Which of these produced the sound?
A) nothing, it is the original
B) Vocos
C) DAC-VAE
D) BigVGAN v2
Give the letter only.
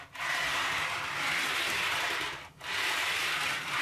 A